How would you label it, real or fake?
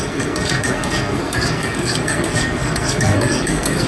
fake